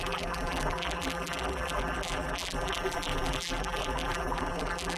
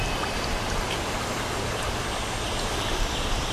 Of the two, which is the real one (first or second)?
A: second